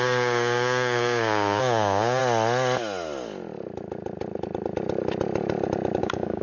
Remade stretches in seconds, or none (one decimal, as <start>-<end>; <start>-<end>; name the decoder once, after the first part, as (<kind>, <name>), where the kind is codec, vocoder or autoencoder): 0.0-2.2 (codec, DAC); 6.0-6.4